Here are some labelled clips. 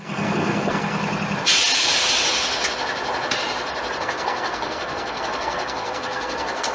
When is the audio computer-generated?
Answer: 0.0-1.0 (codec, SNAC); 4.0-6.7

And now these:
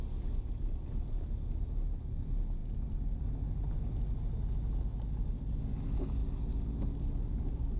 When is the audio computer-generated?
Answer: none